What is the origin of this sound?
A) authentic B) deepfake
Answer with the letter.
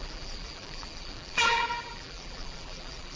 B